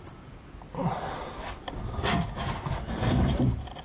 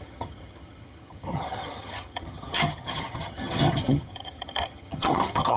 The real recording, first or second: first